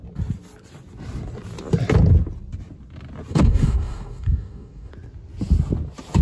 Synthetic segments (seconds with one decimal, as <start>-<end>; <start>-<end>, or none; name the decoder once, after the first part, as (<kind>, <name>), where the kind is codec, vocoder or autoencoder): 3.3-4.9 (codec, DAC)